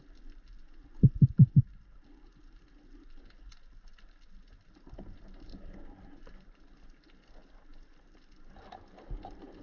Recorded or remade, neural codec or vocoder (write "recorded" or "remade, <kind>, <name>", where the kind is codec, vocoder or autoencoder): recorded